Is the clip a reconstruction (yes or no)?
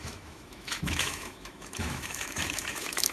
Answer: yes